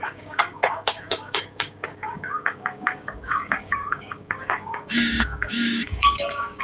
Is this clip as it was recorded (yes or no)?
no